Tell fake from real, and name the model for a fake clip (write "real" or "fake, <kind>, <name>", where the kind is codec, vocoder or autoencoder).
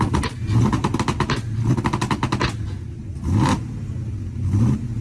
real